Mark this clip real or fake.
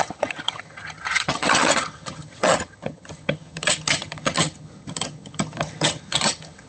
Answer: fake